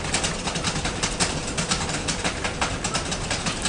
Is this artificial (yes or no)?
no